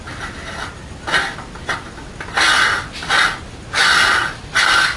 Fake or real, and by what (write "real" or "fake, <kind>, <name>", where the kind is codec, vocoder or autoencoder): real